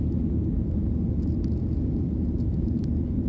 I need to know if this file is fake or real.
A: real